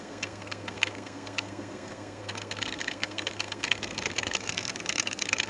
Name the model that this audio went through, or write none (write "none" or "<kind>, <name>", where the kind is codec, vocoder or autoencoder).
codec, SNAC